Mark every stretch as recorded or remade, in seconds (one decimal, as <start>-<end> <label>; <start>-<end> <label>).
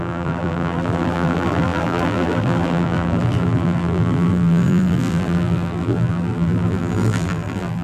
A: 0.0-7.8 remade